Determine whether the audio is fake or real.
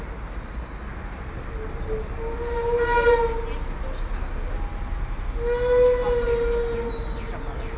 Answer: real